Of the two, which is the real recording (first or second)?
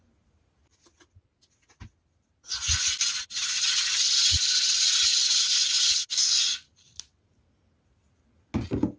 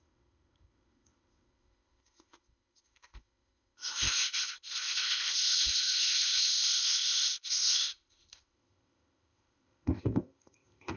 first